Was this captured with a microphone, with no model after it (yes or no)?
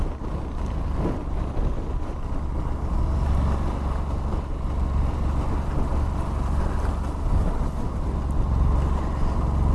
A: yes